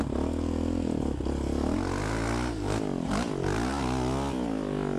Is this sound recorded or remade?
recorded